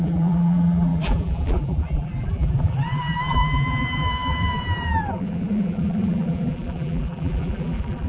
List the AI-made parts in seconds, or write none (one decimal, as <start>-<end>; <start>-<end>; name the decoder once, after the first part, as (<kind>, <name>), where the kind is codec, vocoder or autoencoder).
0.0-8.1 (vocoder, BigVGAN v2)